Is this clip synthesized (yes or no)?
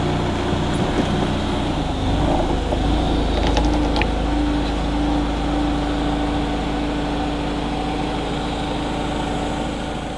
no